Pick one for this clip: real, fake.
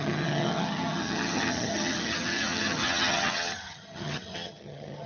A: fake